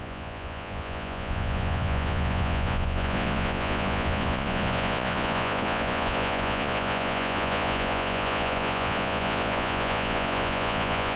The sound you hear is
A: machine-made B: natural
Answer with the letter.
A